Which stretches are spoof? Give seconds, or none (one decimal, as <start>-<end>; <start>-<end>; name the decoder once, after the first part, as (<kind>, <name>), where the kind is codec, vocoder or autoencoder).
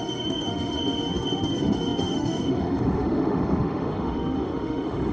0.0-5.1 (autoencoder, DAC-VAE)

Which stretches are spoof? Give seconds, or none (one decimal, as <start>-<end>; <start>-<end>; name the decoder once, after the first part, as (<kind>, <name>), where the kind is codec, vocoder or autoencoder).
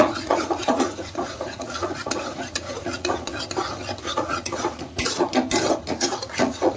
0.0-3.3 (vocoder, Vocos); 4.0-5.3; 5.8-6.8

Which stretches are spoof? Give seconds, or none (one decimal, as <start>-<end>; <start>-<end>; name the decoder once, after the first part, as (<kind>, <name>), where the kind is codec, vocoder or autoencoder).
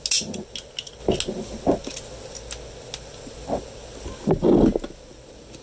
none